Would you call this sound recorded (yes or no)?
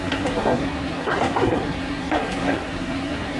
no